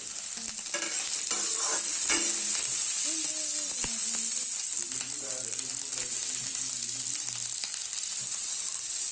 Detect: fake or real real